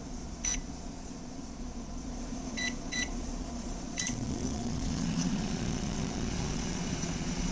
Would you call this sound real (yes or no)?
no